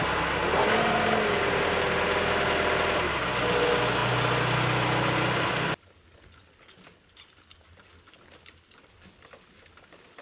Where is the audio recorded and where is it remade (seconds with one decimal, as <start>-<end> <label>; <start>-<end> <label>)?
0.0-10.2 recorded